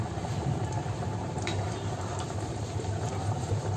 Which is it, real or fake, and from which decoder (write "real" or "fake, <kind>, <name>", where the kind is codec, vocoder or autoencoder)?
fake, vocoder, BigVGAN v2